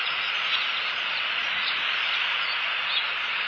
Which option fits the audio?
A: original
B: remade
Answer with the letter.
B